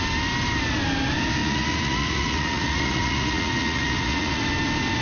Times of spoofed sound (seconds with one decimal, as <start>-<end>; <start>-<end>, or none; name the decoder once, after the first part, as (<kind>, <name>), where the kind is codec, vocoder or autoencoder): 1.4-4.4 (vocoder, Vocos)